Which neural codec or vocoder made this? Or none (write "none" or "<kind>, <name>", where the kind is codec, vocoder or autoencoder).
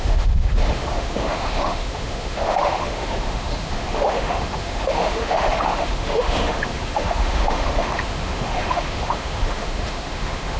autoencoder, DAC-VAE